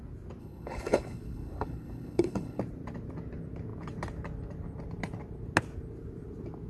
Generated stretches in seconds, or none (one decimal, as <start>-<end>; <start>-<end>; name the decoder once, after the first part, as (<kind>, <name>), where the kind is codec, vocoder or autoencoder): 0.4-2.6 (codec, HILCodec)